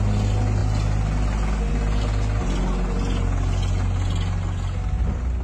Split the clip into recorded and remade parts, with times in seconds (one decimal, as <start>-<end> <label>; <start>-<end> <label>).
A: 0.0-5.4 recorded